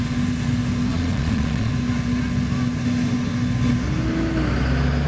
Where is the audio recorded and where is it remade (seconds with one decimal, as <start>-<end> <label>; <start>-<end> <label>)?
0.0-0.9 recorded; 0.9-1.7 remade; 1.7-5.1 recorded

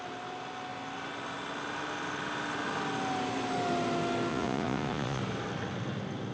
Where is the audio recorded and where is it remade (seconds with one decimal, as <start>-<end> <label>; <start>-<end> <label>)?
0.0-4.3 recorded; 4.3-5.2 remade; 5.2-6.3 recorded

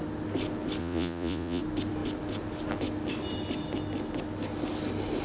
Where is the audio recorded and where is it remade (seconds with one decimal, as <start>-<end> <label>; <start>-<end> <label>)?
0.0-0.8 recorded; 0.8-1.6 remade; 1.6-5.2 recorded

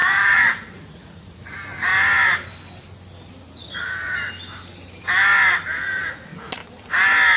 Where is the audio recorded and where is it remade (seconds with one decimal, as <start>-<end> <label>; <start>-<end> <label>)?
0.0-1.9 remade; 1.9-3.4 recorded; 3.4-4.2 remade; 4.2-5.7 recorded; 5.7-6.6 remade; 6.6-7.4 recorded

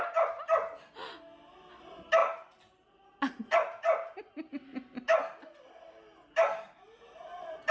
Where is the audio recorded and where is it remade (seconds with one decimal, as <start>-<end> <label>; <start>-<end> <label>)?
0.0-7.7 recorded

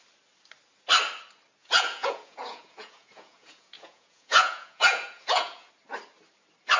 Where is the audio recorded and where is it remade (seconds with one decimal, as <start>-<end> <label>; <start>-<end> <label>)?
0.0-1.6 recorded; 1.6-5.7 remade; 5.7-6.8 recorded

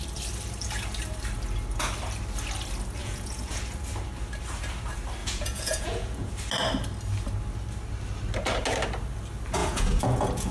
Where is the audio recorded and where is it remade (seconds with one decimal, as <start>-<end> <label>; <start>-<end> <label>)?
0.0-3.0 recorded; 3.0-3.6 remade; 3.6-5.2 recorded; 5.2-6.3 remade; 6.3-9.6 recorded; 9.6-10.5 remade

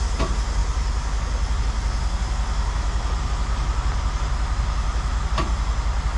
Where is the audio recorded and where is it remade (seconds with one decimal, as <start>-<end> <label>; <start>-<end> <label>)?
0.0-6.2 recorded